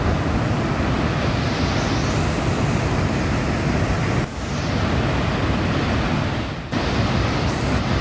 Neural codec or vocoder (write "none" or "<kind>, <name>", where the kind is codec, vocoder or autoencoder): none